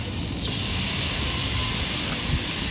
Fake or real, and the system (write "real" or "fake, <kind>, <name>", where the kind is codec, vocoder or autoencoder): real